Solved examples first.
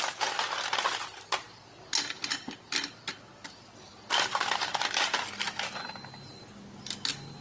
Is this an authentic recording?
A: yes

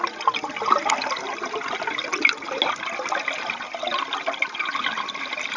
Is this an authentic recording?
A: yes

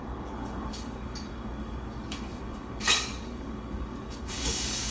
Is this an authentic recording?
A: no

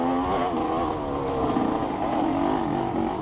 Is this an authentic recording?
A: yes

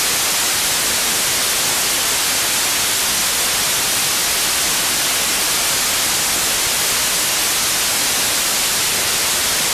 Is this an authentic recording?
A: yes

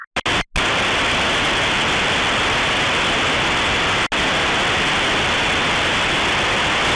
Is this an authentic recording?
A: yes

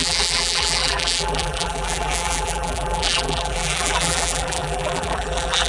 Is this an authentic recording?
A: no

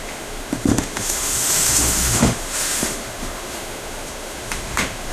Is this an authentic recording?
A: no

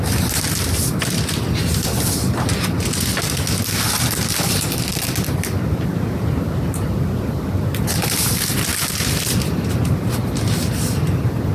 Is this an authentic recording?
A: yes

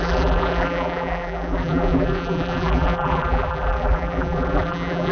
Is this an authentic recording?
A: no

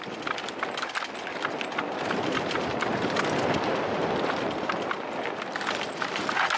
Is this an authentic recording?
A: yes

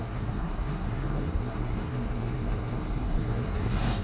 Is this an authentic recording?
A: no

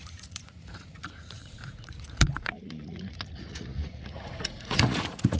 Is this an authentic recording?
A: no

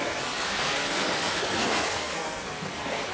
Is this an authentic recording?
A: no